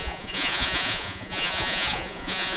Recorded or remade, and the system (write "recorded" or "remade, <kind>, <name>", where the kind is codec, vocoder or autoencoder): remade, vocoder, Vocos